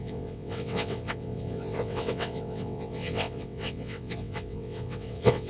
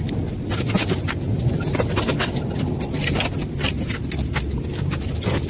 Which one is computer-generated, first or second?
first